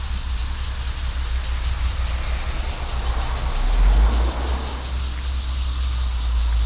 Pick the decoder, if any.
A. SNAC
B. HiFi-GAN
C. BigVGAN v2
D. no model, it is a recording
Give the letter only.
D